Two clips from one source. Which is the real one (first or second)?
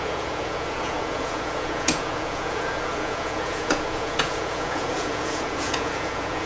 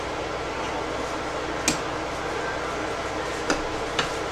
second